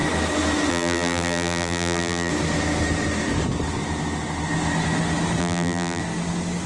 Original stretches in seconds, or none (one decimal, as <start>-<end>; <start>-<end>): 0.0-0.7; 2.3-5.4; 6.0-6.7